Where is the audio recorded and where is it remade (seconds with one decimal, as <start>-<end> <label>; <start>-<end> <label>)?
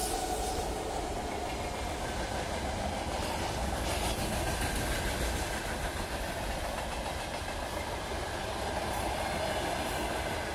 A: 0.0-10.5 recorded